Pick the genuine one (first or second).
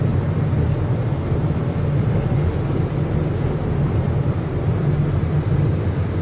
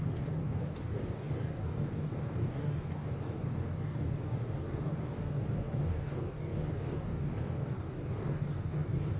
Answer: first